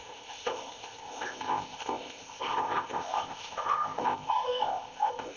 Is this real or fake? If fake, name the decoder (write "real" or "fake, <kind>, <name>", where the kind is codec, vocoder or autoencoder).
fake, codec, ZipCodec